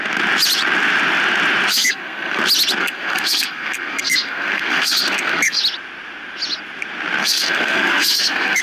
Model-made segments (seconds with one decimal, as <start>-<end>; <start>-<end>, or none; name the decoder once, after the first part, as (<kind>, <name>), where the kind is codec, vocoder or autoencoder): 1.7-2.4 (codec, SNAC); 2.8-5.6; 7.2-8.6